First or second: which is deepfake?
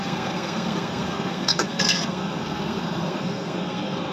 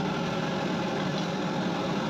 first